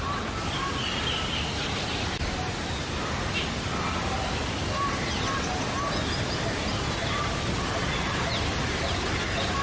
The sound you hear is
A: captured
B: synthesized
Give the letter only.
A